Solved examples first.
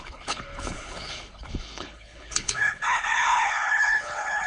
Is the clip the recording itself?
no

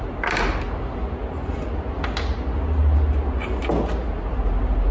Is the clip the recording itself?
yes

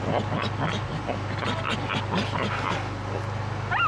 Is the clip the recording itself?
yes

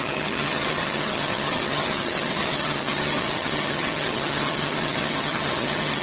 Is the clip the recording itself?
no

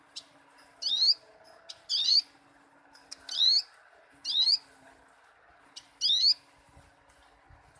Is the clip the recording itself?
yes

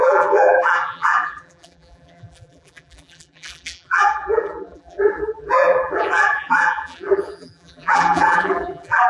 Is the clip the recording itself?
no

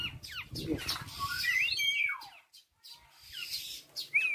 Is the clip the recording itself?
yes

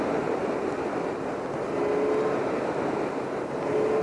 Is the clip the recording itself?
yes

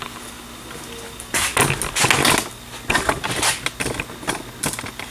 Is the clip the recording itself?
yes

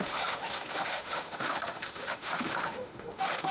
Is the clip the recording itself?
no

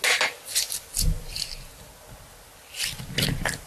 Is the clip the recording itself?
yes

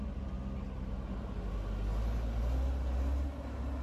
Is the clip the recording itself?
yes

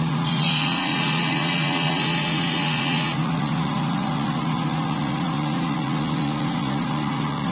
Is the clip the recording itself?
no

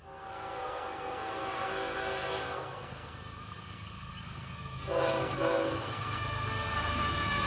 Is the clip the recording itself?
no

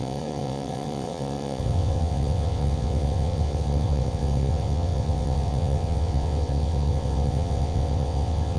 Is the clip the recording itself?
no